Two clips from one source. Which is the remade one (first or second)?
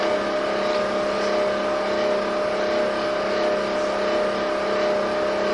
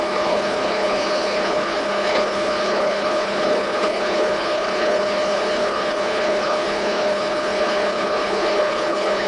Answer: second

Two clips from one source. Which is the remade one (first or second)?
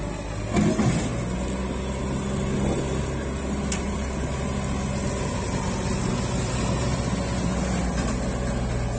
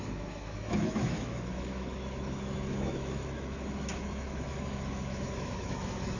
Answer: second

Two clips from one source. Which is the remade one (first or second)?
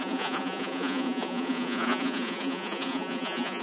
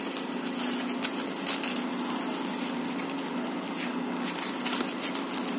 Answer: first